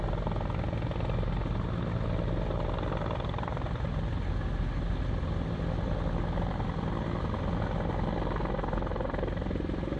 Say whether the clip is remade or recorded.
recorded